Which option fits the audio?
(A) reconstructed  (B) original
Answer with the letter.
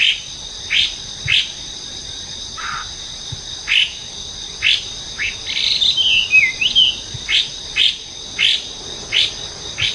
B